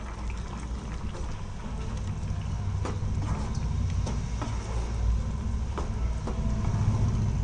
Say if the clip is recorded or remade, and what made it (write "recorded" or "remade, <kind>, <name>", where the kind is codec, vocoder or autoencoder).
recorded